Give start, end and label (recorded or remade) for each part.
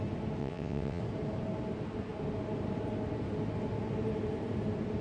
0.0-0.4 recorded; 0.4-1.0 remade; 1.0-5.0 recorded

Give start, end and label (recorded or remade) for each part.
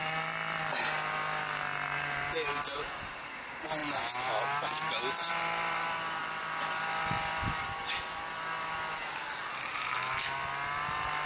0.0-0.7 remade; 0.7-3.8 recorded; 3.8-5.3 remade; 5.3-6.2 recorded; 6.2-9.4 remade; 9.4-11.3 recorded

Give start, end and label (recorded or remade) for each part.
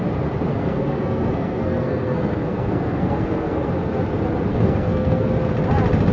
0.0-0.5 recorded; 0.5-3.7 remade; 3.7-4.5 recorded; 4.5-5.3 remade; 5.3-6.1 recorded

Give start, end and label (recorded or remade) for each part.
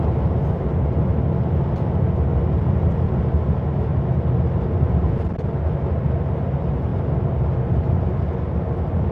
0.0-9.1 recorded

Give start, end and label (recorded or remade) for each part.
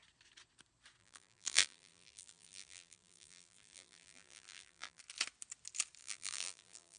0.0-1.0 recorded; 1.0-5.0 remade; 5.0-6.0 recorded; 6.0-7.0 remade